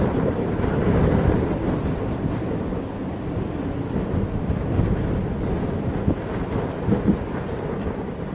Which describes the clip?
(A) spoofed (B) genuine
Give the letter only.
B